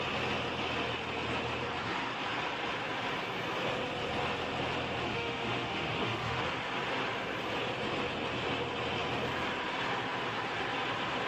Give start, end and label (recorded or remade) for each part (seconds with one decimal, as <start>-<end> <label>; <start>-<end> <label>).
0.0-5.1 recorded; 5.1-6.4 remade; 6.4-11.3 recorded